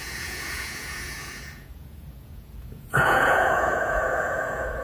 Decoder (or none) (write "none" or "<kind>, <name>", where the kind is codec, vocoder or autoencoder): vocoder, Vocos